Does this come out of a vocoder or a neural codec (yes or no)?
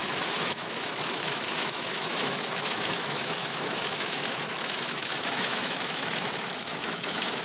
yes